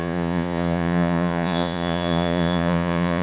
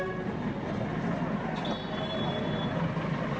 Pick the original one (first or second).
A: second